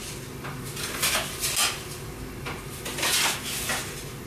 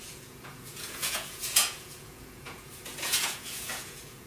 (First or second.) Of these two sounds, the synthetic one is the second